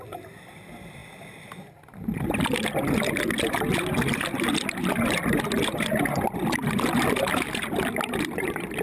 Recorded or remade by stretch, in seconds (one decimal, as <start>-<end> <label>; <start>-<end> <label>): 0.0-1.0 remade; 1.0-5.4 recorded; 5.4-8.8 remade